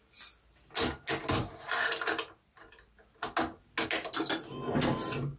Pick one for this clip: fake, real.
real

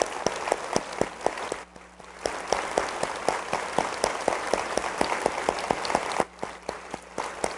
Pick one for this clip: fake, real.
real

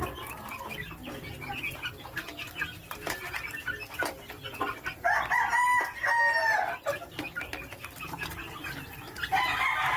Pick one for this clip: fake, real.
real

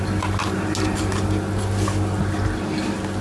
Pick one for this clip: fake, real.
real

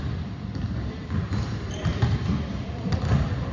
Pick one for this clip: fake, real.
fake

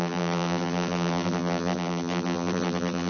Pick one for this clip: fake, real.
fake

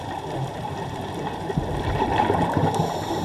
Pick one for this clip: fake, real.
fake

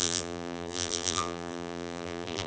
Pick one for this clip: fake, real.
fake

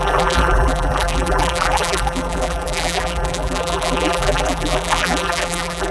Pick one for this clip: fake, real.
fake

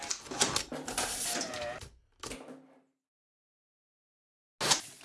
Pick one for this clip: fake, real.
real